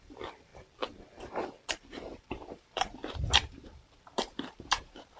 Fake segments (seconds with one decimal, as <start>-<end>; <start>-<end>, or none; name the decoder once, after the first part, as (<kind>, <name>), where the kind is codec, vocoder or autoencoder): 0.0-0.5 (vocoder, BigVGAN v2); 2.1-5.2